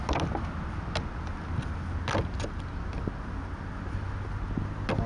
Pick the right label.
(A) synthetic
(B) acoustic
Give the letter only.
B